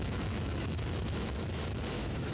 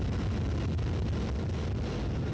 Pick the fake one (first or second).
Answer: first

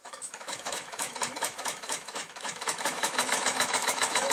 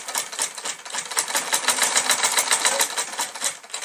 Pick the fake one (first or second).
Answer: first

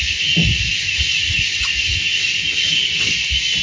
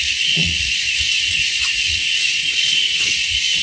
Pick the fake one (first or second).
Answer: second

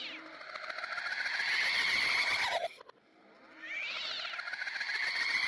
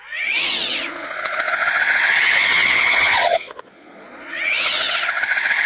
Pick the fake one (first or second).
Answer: second